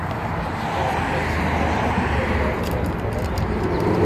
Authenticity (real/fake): fake